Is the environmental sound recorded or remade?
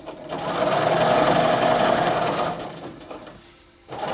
recorded